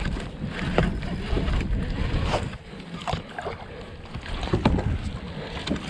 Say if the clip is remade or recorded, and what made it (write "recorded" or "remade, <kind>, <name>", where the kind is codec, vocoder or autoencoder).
recorded